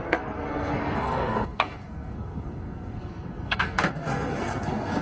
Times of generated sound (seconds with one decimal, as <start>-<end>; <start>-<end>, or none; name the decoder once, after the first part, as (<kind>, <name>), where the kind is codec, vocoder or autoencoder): 0.0-5.0 (codec, SNAC)